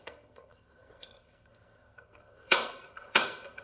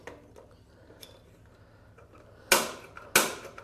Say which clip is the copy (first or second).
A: first